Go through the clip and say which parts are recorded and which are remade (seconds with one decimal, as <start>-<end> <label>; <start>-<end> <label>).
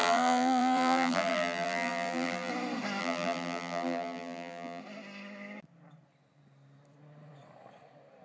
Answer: 0.0-2.5 remade; 2.5-3.0 recorded; 3.0-4.8 remade; 4.8-8.2 recorded